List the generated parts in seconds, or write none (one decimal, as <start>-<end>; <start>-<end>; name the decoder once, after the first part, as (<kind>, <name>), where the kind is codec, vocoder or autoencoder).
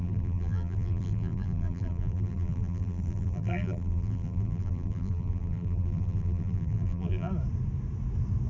0.0-7.3 (vocoder, BigVGAN v2)